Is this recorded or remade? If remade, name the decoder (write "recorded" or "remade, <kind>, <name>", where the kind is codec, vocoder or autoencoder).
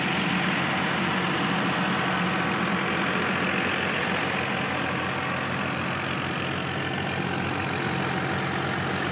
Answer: recorded